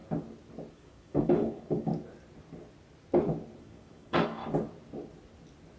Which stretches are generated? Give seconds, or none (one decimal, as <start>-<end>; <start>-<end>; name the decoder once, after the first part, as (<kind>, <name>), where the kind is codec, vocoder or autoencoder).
0.7-1.9 (codec, DAC); 3.6-4.4